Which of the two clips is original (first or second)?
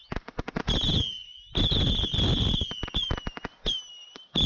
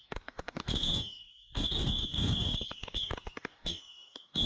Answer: first